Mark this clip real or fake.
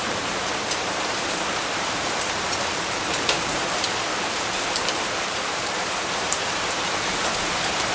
fake